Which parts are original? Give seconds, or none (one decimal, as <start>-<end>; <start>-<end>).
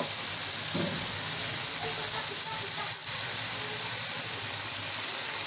1.4-2.3